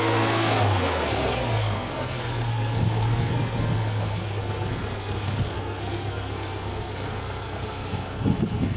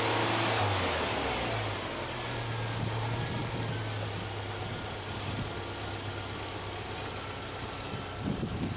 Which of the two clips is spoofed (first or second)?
first